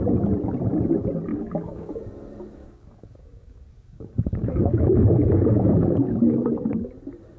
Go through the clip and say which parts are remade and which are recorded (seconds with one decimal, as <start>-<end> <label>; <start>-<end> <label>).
0.0-1.3 recorded; 1.3-2.0 remade; 2.0-2.6 recorded; 2.6-6.9 remade; 6.9-7.4 recorded